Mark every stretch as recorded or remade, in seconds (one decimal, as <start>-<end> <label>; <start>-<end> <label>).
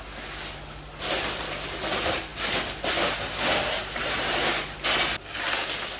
0.0-6.0 recorded